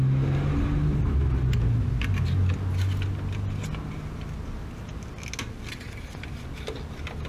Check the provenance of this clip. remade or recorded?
recorded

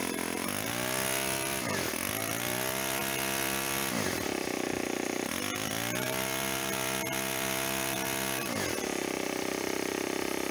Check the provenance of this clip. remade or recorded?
remade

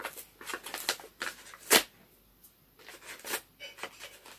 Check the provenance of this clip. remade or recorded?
recorded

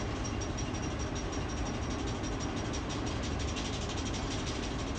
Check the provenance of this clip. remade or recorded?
recorded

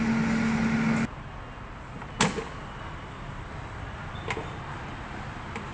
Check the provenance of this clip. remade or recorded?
recorded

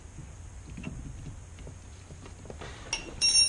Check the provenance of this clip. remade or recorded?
recorded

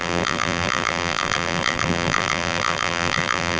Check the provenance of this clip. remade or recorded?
remade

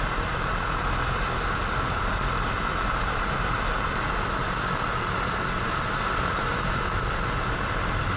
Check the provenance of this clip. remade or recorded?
recorded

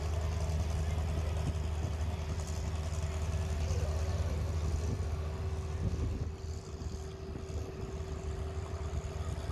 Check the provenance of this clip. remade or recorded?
recorded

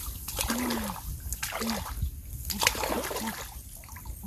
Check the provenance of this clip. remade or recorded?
recorded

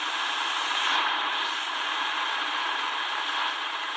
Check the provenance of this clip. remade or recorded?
remade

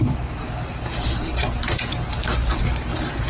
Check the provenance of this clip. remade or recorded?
remade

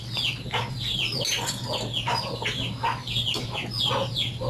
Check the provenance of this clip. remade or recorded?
recorded